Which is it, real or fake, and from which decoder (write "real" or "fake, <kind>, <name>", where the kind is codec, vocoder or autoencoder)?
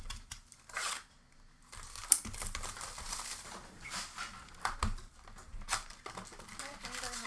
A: real